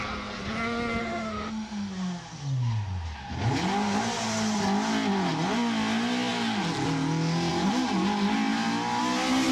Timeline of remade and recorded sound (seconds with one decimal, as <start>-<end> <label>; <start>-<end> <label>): 0.0-1.0 recorded; 1.0-1.9 remade; 1.9-9.5 recorded